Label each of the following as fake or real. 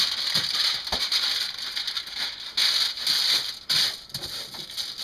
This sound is real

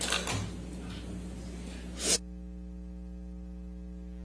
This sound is real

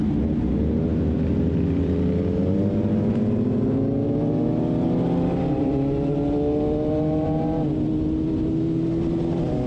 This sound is real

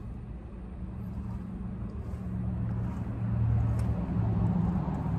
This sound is real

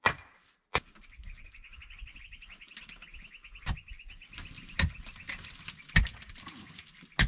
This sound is real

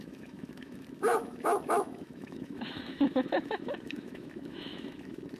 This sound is fake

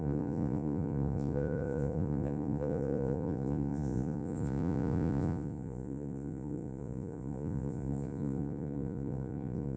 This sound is fake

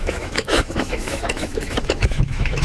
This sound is fake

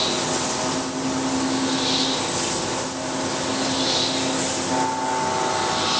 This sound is real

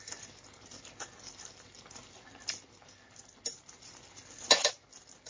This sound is real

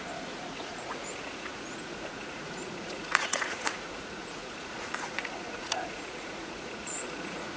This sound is fake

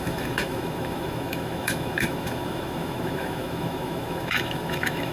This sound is fake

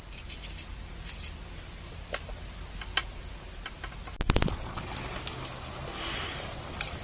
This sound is real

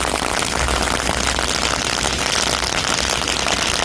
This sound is real